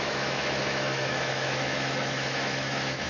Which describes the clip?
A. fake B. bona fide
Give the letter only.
A